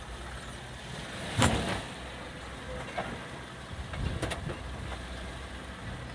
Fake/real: real